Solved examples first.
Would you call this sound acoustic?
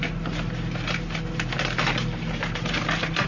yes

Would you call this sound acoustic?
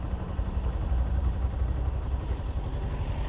no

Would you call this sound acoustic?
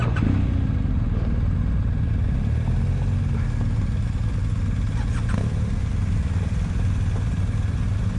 yes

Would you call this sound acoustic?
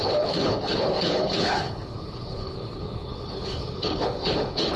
no